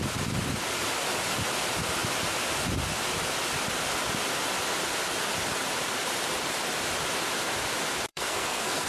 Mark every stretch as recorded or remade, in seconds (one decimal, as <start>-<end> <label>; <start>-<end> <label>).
0.0-8.1 recorded; 8.1-8.9 remade